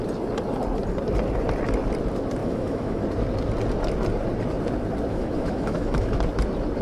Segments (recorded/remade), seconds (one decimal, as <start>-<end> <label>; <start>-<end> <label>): 0.0-2.4 recorded; 2.4-3.0 remade; 3.0-5.1 recorded; 5.1-6.2 remade; 6.2-6.8 recorded